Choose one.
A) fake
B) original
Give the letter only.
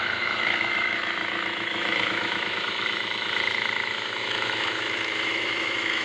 A